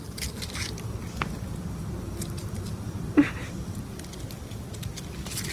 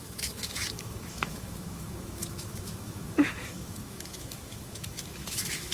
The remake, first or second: second